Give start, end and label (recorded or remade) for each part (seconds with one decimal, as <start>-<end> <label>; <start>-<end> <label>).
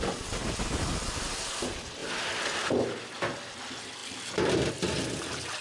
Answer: 0.0-5.6 recorded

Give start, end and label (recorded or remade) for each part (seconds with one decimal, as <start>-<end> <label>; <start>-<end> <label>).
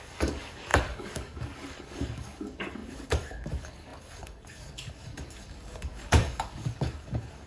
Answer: 0.0-7.5 remade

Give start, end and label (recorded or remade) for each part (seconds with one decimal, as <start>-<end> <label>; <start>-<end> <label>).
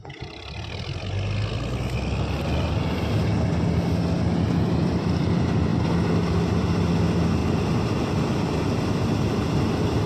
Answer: 0.0-10.1 recorded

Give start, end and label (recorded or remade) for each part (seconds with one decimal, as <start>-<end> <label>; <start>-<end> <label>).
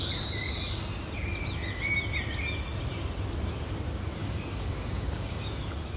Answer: 0.0-4.2 recorded; 4.2-5.6 remade; 5.6-6.0 recorded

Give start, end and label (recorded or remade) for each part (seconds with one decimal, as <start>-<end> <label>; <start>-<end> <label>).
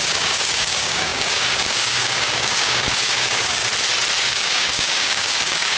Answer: 0.0-3.6 remade; 3.6-4.2 recorded; 4.2-5.8 remade